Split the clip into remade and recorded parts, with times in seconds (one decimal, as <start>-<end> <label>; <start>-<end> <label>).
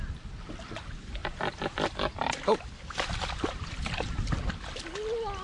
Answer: 0.0-1.2 recorded; 1.2-4.4 remade; 4.4-5.4 recorded